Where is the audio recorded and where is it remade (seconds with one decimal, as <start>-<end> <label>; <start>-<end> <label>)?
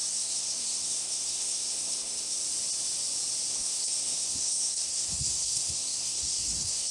0.0-2.4 remade; 2.4-3.5 recorded; 3.5-6.9 remade